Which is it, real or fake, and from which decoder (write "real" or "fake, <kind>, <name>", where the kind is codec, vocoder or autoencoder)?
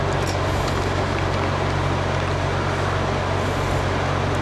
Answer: real